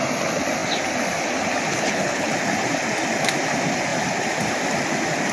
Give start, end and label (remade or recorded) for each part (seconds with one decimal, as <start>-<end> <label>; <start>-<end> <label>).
0.0-1.7 recorded; 1.7-2.3 remade; 2.3-5.3 recorded